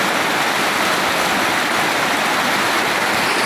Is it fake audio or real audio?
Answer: real